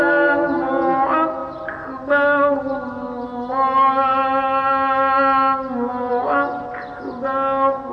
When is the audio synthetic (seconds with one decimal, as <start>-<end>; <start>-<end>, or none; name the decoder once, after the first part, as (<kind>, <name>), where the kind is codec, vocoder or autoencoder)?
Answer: 0.0-0.7 (autoencoder, DAC-VAE)